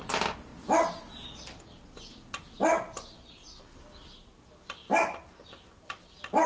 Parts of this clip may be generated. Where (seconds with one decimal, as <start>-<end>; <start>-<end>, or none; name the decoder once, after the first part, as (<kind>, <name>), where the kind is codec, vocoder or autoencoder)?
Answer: none